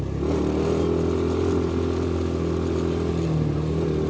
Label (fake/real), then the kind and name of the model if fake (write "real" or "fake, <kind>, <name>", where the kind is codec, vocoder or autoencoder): real